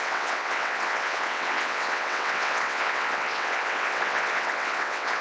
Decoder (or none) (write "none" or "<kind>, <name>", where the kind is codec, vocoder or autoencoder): vocoder, WaveNeXt